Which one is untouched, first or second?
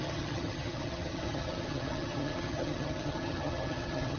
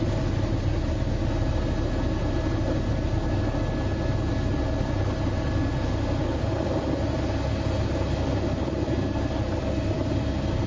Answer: second